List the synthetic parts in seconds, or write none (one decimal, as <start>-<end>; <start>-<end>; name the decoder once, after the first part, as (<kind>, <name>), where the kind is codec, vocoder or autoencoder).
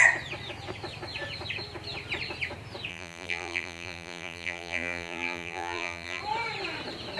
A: 2.9-6.2 (vocoder, BigVGAN v2)